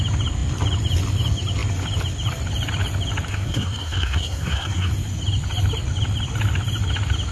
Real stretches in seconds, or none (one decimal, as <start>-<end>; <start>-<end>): 0.0-3.3; 4.9-7.3